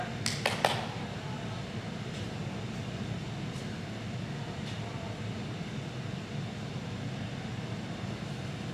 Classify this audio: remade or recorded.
recorded